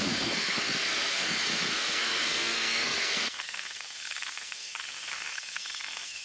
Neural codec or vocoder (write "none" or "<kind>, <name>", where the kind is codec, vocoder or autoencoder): codec, SNAC